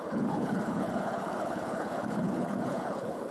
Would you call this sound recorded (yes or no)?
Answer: no